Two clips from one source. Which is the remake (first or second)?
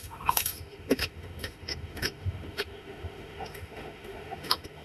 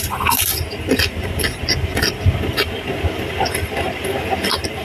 first